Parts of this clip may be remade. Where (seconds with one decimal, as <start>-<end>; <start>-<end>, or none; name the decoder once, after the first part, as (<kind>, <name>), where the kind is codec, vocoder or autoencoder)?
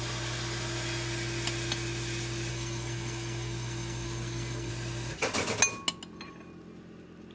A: 2.5-4.7 (codec, SNAC)